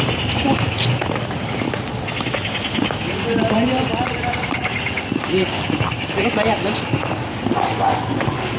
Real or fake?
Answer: real